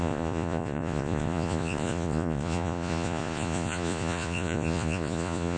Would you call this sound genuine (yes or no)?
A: no